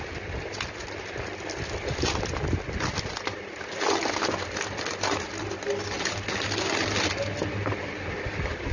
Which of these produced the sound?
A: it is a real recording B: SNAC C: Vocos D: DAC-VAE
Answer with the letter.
A